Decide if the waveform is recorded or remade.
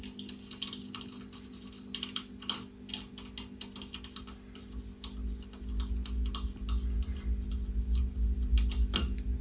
recorded